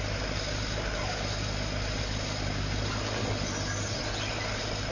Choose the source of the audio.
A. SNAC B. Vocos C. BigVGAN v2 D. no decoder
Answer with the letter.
D